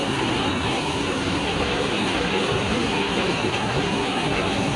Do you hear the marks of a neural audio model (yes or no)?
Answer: yes